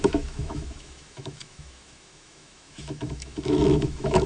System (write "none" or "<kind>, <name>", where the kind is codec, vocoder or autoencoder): autoencoder, DAC-VAE